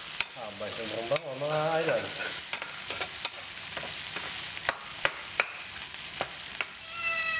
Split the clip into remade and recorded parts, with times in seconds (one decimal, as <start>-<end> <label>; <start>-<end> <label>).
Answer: 0.0-7.4 recorded